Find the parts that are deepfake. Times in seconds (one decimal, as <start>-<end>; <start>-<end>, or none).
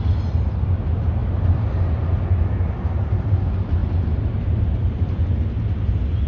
none